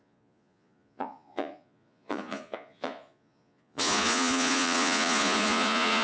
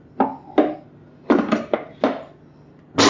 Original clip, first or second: second